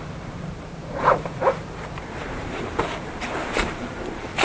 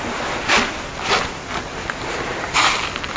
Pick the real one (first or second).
second